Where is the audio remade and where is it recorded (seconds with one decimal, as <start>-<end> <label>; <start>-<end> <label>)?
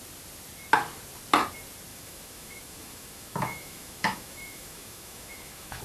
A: 0.0-1.9 recorded; 1.9-5.8 remade